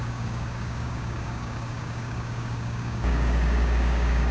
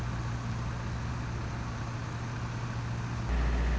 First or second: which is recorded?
second